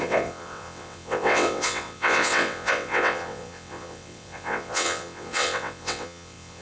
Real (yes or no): no